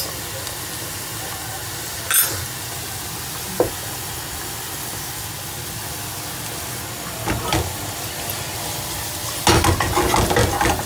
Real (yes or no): yes